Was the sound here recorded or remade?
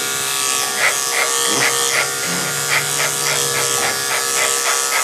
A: recorded